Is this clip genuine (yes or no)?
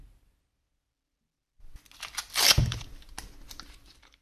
yes